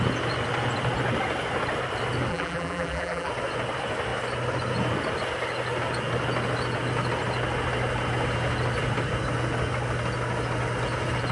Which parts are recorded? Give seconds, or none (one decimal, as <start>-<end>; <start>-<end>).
0.0-2.3; 3.3-11.3